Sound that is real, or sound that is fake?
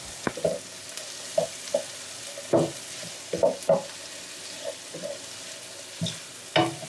real